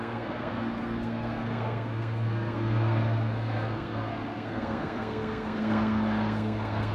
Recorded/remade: remade